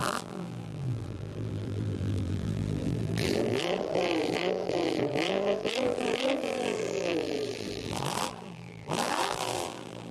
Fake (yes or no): yes